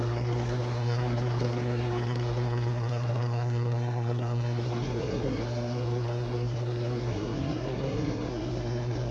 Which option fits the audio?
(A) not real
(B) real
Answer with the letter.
A